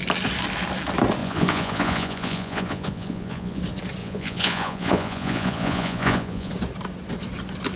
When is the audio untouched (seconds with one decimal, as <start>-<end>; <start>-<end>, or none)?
0.0-1.2; 3.6-4.0; 6.5-7.8